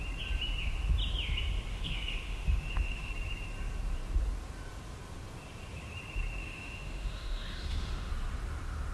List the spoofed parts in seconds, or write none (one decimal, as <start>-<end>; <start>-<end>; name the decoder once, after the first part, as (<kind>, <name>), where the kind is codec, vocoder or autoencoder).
1.7-3.1 (autoencoder, DAC-VAE); 6.4-8.1